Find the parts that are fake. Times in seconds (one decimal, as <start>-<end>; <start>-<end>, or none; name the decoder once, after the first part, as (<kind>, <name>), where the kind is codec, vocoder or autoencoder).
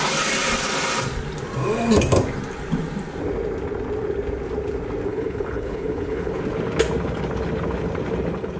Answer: 5.1-6.4 (codec, HILCodec)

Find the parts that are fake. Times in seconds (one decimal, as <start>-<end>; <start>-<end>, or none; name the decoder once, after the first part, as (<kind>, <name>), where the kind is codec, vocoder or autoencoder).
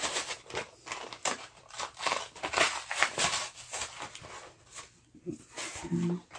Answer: none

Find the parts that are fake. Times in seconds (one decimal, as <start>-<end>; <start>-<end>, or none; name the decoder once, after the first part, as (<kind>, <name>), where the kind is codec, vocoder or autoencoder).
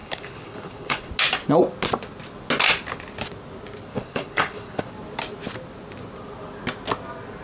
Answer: 0.0-1.1 (codec, HILCodec); 3.9-4.9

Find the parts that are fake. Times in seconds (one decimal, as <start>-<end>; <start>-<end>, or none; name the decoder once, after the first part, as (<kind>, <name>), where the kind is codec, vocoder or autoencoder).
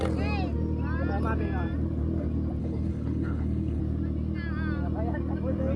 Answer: 2.6-3.8 (codec, HILCodec)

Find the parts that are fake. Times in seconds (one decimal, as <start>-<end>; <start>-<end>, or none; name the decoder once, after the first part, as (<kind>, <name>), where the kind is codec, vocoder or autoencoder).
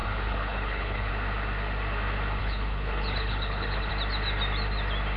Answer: 0.0-1.1 (codec, HILCodec); 2.4-3.9